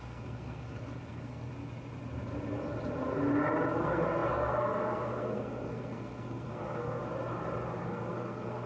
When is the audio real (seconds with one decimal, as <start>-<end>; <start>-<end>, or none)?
1.5-3.8; 7.0-7.8